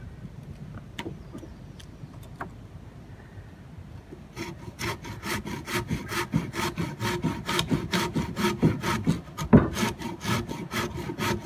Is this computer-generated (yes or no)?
no